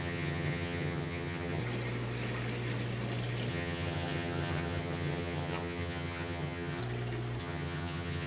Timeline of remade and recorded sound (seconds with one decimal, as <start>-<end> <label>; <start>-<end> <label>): 0.0-1.6 remade; 1.6-3.5 recorded; 3.5-6.8 remade; 6.8-7.4 recorded; 7.4-8.3 remade